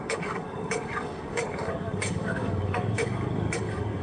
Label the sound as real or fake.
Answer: fake